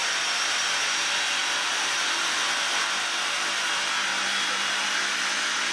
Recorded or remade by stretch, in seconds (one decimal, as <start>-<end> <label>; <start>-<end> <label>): 0.0-5.7 recorded